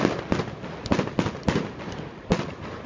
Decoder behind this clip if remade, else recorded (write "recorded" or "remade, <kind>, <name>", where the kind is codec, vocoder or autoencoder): recorded